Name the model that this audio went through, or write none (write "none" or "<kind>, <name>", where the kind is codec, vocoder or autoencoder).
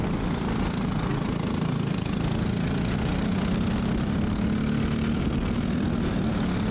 none